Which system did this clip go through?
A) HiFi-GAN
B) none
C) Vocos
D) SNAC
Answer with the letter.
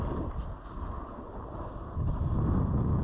B